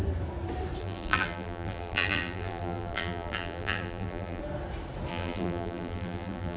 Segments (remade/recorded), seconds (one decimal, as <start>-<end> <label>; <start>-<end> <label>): 0.0-0.8 recorded; 0.8-4.4 remade; 4.4-5.1 recorded; 5.1-6.6 remade